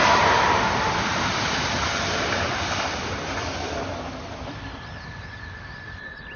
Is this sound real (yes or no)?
no